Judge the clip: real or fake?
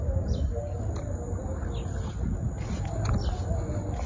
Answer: real